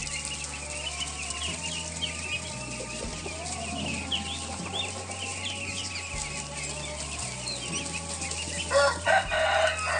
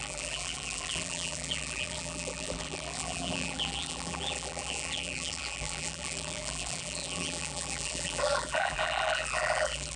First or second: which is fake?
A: second